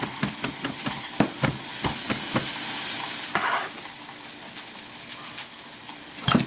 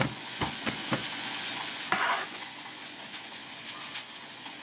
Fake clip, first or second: second